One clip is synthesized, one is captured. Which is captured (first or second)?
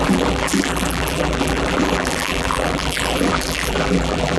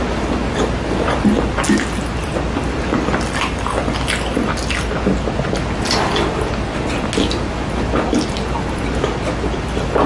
second